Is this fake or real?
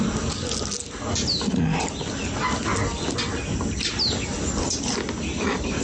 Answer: real